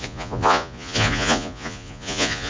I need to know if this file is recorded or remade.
remade